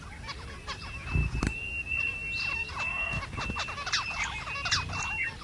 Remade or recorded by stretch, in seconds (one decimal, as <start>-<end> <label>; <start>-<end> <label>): 0.0-5.4 recorded